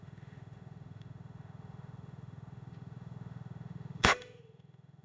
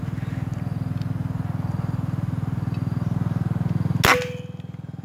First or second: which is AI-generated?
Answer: first